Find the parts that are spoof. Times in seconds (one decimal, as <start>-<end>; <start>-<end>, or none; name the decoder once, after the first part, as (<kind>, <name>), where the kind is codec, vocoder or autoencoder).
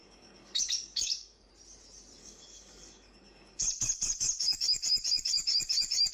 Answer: 0.0-1.5 (codec, DAC); 2.2-6.1